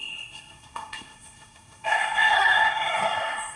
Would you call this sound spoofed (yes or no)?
yes